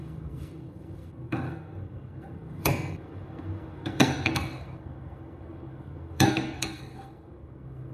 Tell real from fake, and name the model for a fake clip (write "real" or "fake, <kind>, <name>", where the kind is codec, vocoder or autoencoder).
fake, codec, SNAC